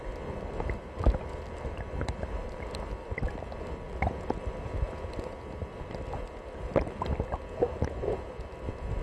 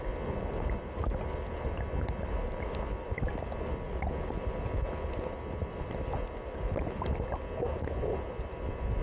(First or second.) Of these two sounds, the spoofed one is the first